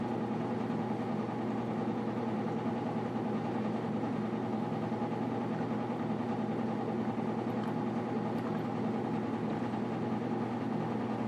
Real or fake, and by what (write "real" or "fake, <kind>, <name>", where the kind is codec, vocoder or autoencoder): real